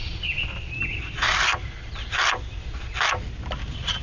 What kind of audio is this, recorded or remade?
recorded